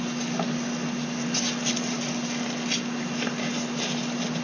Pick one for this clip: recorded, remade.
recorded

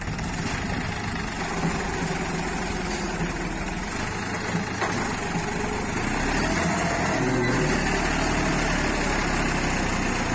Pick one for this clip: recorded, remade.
recorded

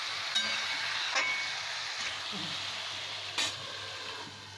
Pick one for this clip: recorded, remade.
recorded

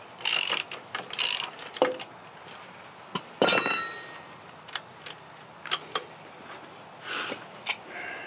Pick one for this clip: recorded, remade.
recorded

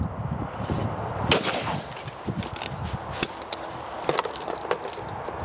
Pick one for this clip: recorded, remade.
recorded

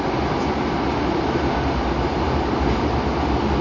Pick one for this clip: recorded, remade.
recorded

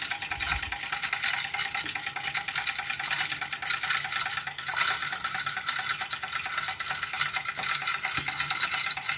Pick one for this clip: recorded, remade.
recorded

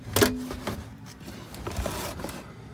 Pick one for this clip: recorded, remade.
recorded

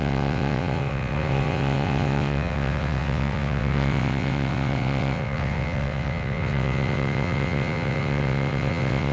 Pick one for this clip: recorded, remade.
remade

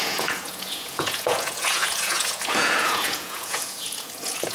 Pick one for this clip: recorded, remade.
remade